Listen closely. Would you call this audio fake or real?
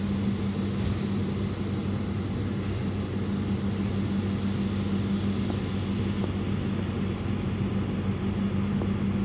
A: real